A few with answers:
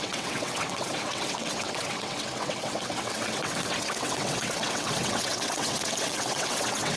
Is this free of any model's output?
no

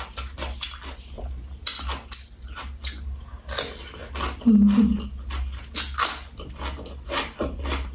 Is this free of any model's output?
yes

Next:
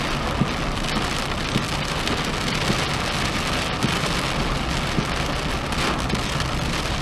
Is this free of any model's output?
yes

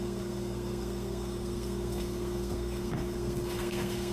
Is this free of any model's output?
no